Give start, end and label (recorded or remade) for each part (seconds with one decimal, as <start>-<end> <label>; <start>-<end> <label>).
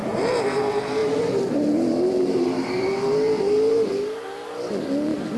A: 0.0-0.6 remade; 0.6-1.0 recorded; 1.0-3.1 remade; 3.1-5.4 recorded